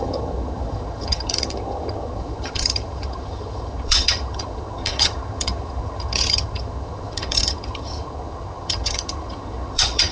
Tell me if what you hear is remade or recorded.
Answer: remade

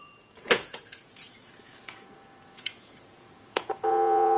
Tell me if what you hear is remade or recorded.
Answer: remade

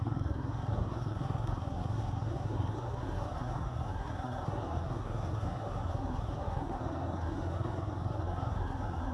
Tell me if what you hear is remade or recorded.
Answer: remade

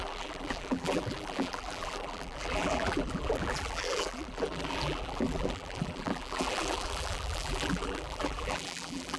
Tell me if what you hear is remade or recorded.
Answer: remade